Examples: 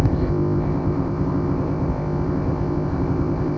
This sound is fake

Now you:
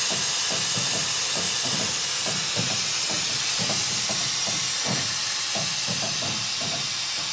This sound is real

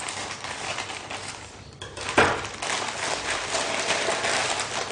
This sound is real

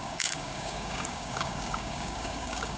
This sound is fake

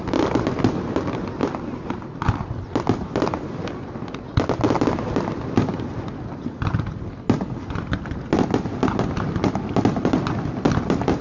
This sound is real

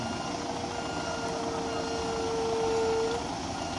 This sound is real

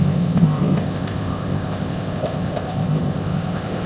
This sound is fake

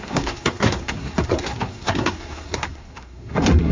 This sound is fake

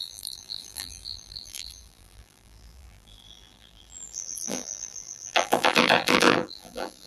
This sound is fake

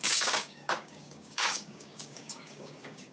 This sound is fake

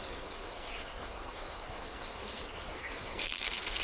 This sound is fake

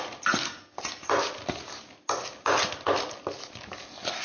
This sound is real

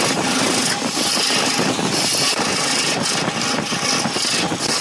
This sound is real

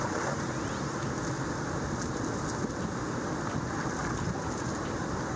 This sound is real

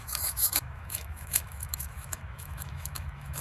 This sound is fake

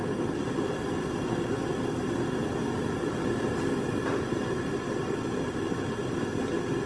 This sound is real